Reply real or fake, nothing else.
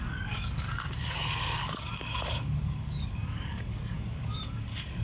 fake